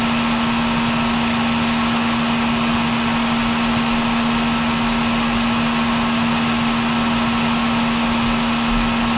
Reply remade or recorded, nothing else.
recorded